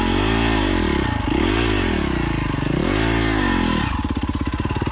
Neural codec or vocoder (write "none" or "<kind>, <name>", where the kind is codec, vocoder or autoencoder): none